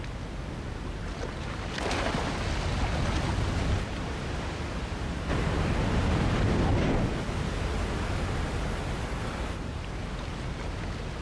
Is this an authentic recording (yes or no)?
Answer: yes